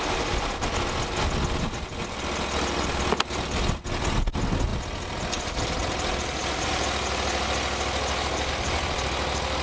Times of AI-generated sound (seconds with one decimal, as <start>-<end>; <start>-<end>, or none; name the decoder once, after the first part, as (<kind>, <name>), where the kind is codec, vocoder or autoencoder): none